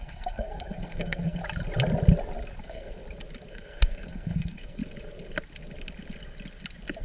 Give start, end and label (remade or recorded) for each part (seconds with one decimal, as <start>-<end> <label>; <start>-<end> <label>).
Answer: 0.0-1.4 remade; 1.4-2.6 recorded; 2.6-3.0 remade; 3.0-3.5 recorded; 3.5-4.8 remade; 4.8-7.0 recorded